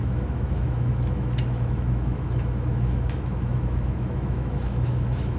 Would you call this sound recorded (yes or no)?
no